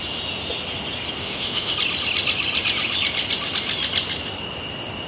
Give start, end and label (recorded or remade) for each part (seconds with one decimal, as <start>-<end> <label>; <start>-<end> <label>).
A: 0.0-1.2 recorded; 1.2-1.7 remade; 1.7-5.1 recorded